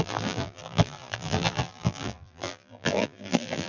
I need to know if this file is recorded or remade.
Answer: remade